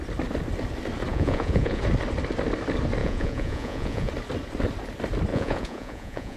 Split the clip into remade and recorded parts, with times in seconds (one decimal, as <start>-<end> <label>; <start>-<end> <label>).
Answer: 0.0-1.1 recorded; 1.1-1.8 remade; 1.8-3.0 recorded; 3.0-4.1 remade; 4.1-5.3 recorded; 5.3-6.4 remade